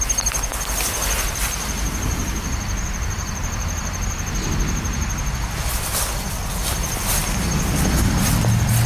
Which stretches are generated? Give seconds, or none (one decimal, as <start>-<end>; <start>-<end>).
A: none